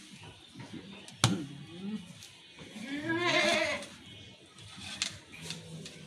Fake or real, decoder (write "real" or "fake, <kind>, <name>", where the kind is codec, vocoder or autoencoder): real